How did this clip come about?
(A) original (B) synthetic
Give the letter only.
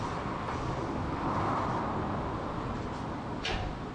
A